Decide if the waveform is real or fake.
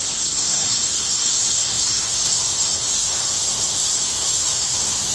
fake